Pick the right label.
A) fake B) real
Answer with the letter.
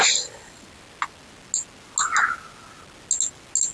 B